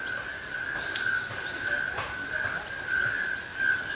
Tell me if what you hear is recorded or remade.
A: recorded